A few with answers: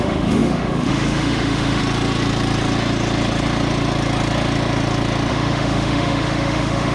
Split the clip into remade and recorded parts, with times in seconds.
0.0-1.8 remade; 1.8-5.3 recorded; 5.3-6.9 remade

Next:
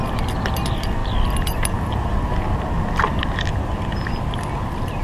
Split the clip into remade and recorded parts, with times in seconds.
0.0-5.0 recorded

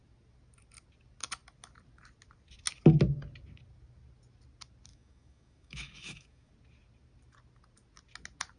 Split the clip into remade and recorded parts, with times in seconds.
0.0-4.9 recorded; 4.9-6.5 remade; 6.5-8.6 recorded

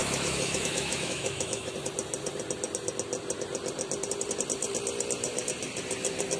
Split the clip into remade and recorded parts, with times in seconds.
0.0-1.7 remade; 1.7-6.4 recorded

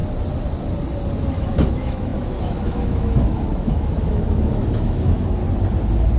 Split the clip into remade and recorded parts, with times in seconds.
0.0-1.4 recorded; 1.4-5.4 remade; 5.4-6.2 recorded